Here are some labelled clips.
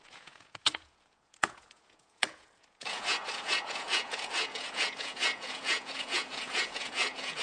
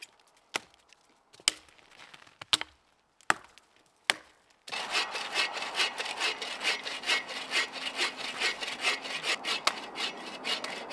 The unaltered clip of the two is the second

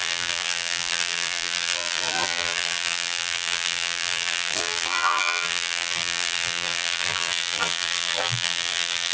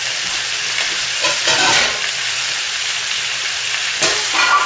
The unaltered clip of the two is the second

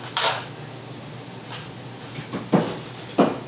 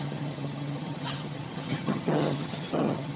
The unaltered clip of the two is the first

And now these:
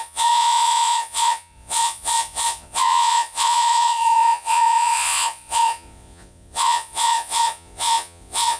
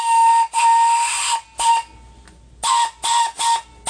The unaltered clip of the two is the second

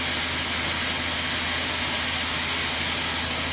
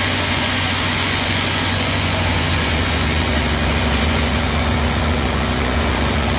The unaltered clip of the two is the first